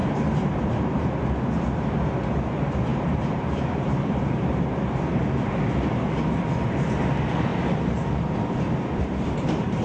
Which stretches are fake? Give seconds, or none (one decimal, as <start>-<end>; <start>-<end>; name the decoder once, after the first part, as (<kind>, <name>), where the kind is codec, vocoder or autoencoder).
0.0-1.0 (vocoder, BigVGAN v2); 2.9-5.5